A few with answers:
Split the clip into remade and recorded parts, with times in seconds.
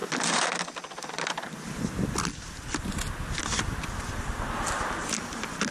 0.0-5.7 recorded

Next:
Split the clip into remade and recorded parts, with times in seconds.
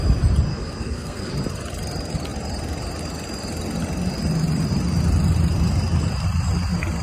0.0-0.5 recorded; 0.5-1.3 remade; 1.3-7.0 recorded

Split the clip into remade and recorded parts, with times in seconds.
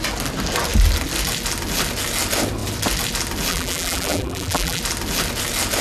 0.0-3.5 recorded; 3.5-4.8 remade; 4.8-5.8 recorded